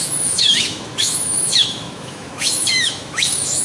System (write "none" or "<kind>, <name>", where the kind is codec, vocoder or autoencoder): autoencoder, DAC-VAE